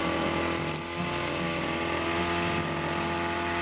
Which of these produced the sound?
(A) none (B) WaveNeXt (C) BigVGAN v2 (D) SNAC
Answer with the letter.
A